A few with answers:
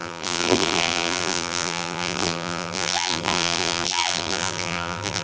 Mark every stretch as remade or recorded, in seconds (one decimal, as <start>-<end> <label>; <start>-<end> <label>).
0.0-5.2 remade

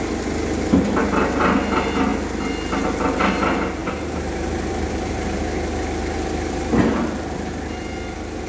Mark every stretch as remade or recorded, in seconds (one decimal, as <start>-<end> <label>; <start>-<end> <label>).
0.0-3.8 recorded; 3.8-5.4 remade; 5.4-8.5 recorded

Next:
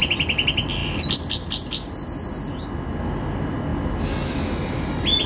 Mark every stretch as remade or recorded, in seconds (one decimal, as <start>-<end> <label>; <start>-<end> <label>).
0.0-5.3 recorded

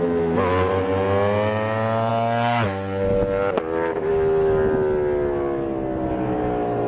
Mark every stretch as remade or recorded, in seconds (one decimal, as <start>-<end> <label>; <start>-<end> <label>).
0.0-6.9 recorded

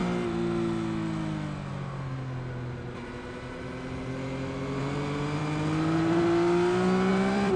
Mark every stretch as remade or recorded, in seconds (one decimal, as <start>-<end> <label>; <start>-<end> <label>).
0.0-7.1 recorded; 7.1-7.6 remade